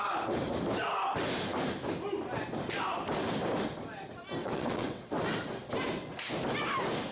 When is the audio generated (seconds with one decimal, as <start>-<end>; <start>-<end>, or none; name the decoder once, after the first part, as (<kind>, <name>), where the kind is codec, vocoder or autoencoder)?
4.4-5.1 (vocoder, WaveNeXt)